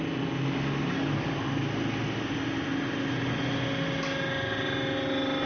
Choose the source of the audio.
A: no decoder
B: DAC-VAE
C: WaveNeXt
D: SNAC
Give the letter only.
A